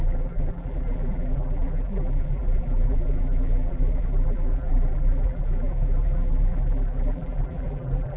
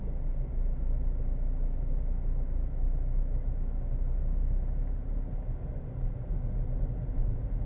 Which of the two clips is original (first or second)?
second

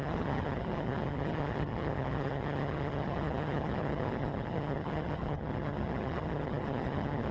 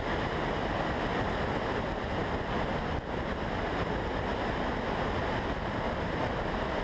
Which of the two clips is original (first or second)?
second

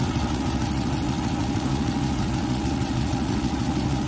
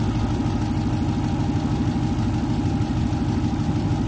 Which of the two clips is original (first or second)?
second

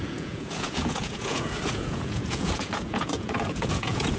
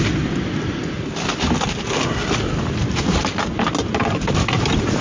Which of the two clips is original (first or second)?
second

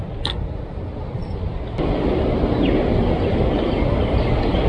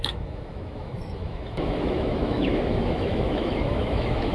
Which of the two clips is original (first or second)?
first